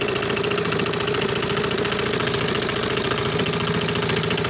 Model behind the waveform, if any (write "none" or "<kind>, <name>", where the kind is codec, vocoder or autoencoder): none